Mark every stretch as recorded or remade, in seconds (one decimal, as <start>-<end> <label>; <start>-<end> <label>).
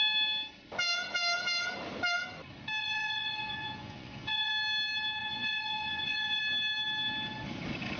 0.0-2.8 recorded; 2.8-4.5 remade; 4.5-5.2 recorded; 5.2-6.4 remade; 6.4-8.0 recorded